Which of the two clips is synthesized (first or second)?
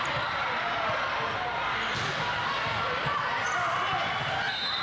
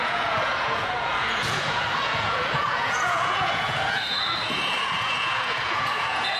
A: second